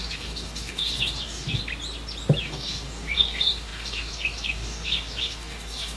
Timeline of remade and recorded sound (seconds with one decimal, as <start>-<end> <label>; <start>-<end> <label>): 0.0-1.6 remade; 1.6-2.4 recorded; 2.4-6.0 remade